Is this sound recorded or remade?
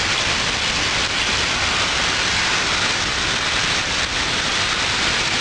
recorded